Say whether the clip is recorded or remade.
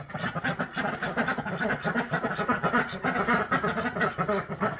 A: recorded